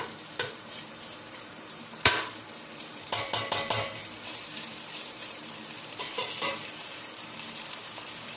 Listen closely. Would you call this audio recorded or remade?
remade